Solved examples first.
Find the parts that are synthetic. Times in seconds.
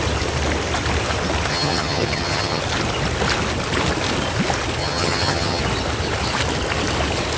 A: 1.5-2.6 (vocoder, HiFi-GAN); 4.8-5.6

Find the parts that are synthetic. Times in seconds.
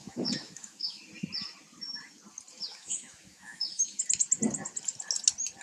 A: 0.0-1.0 (autoencoder, DAC-VAE); 2.7-4.0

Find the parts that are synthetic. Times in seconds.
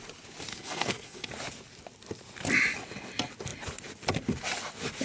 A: 0.5-1.3 (codec, SNAC)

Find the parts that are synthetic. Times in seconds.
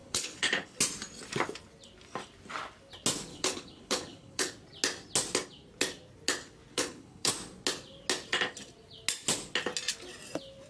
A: 0.0-0.8 (codec, HILCodec); 3.3-4.5; 6.7-7.3